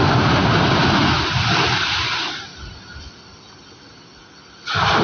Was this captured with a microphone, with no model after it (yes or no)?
yes